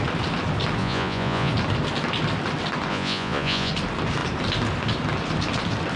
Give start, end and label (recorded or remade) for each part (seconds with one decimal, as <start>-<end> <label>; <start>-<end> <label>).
0.0-0.8 recorded; 0.8-1.5 remade; 1.5-2.9 recorded; 2.9-3.7 remade; 3.7-6.0 recorded